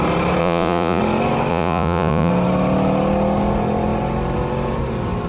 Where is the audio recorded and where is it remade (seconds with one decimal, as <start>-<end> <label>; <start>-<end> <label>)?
0.0-0.4 recorded; 0.4-1.0 remade; 1.0-1.5 recorded; 1.5-2.3 remade; 2.3-5.3 recorded